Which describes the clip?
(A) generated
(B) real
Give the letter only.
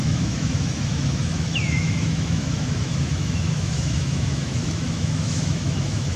A